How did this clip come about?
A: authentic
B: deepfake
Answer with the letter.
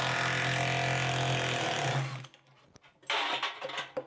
A